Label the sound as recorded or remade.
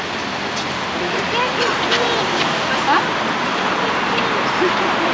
recorded